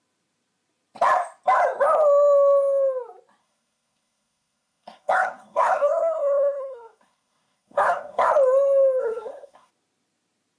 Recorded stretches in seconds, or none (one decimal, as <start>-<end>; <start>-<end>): 0.0-3.4; 8.3-9.0; 9.7-10.6